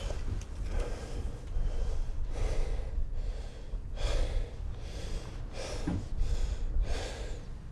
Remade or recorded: recorded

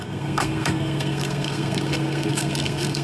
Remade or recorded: remade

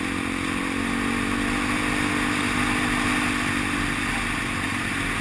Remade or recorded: recorded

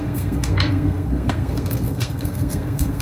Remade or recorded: remade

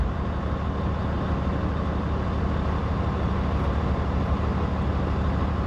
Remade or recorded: recorded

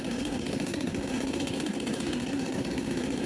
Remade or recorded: remade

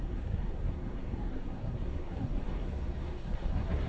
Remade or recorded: remade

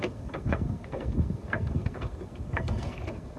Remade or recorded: remade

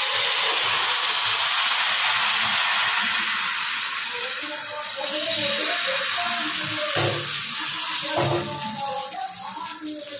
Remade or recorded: recorded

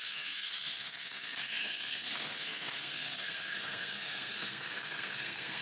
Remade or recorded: remade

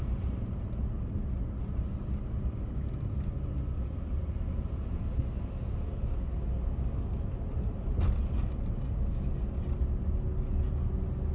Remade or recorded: recorded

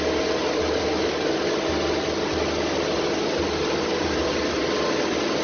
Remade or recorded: recorded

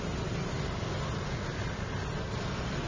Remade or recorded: recorded